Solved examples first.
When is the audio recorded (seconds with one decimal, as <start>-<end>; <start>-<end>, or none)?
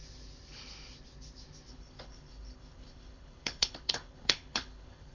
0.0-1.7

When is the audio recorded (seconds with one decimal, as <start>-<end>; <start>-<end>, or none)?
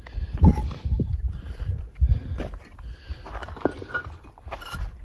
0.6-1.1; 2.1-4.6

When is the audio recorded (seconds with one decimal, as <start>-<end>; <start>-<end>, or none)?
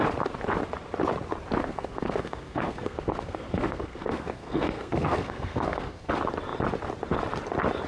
0.0-1.6; 6.1-7.9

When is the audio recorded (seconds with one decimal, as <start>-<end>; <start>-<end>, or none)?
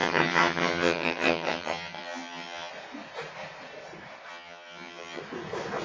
2.7-4.3; 5.2-5.8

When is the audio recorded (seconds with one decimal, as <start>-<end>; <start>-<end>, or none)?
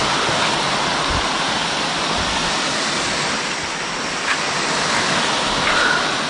0.0-6.3